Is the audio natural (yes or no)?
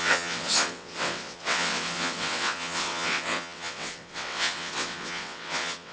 no